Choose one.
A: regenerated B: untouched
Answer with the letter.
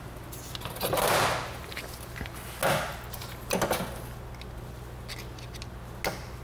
B